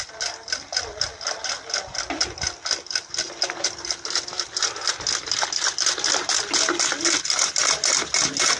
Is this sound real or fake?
real